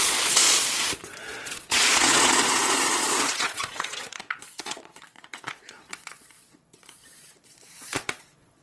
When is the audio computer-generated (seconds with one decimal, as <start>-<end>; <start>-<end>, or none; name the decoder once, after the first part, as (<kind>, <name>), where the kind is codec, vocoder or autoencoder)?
0.0-8.6 (vocoder, Vocos)